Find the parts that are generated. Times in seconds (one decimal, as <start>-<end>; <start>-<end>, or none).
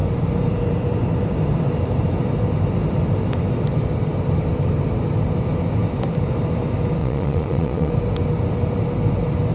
7.0-7.9